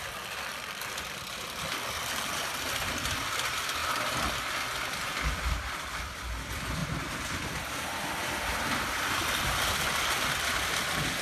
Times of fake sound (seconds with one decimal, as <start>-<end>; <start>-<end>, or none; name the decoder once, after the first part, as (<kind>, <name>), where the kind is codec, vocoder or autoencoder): 0.0-3.8 (vocoder, BigVGAN v2); 4.9-6.8; 9.4-11.2